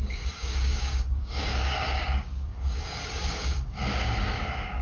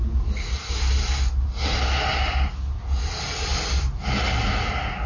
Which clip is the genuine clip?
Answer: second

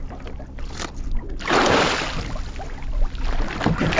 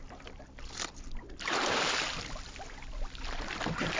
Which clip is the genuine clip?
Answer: first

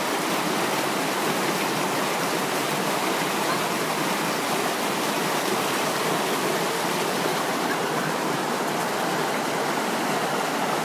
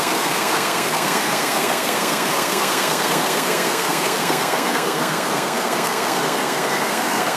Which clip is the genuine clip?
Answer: first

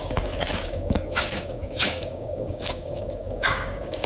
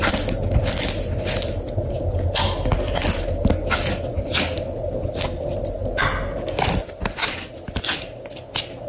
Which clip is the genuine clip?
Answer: second